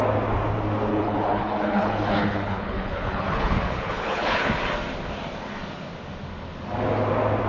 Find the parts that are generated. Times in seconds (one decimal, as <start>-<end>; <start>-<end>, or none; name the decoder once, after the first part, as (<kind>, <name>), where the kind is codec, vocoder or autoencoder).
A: 0.9-4.5 (codec, HILCodec)